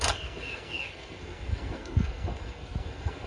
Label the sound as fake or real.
fake